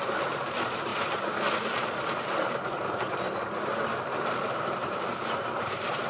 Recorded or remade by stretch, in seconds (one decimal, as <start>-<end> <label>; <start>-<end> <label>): 0.0-6.1 remade